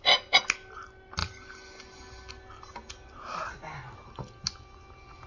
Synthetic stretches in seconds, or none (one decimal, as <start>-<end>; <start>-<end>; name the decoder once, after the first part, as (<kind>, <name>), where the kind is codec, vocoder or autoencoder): none